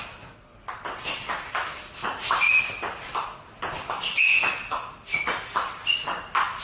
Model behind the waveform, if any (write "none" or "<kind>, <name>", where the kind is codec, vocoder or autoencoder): none